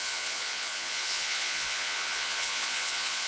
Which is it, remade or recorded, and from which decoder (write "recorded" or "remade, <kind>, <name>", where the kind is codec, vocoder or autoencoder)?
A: remade, vocoder, Vocos